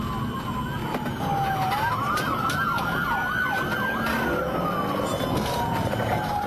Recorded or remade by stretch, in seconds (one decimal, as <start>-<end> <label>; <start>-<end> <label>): 0.0-6.5 recorded